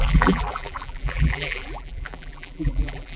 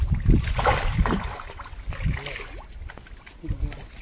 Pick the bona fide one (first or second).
second